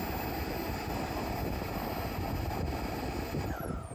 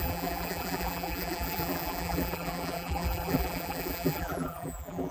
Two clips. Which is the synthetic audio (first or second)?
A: second